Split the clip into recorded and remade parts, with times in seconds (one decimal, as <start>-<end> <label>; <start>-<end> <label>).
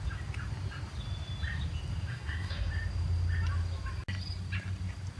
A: 0.0-2.1 recorded; 2.1-2.7 remade; 2.7-5.2 recorded